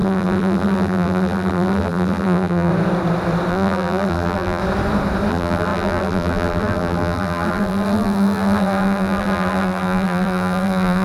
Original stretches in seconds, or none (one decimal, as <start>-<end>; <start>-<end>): 2.7-3.5; 4.6-5.3